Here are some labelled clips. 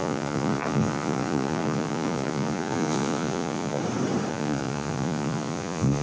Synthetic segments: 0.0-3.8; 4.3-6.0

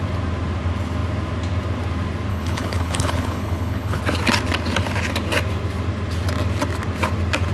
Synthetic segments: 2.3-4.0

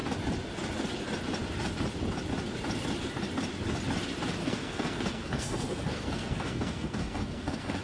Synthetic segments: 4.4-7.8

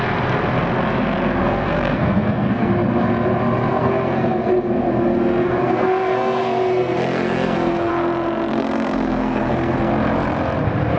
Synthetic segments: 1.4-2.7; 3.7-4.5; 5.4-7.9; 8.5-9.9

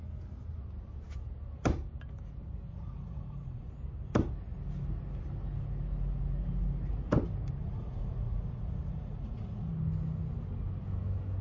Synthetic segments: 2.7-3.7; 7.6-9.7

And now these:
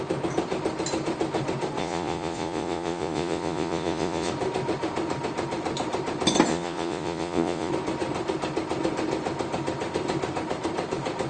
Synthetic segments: 1.8-4.3; 6.5-7.7

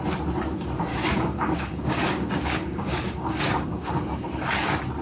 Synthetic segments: 0.9-3.9